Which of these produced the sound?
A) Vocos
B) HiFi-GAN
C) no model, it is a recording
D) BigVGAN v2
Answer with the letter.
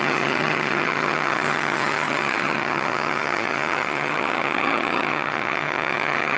B